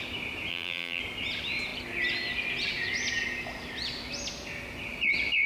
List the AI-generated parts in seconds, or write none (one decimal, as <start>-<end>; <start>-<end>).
0.5-1.0